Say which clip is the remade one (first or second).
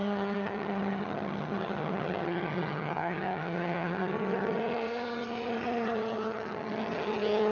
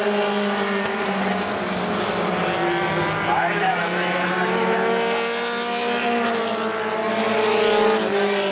first